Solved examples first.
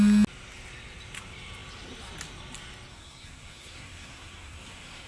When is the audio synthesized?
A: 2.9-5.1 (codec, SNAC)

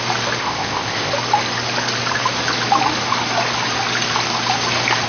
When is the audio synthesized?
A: 0.4-1.1 (codec, ZipCodec)